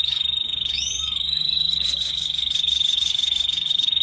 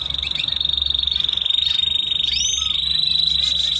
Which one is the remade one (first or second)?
first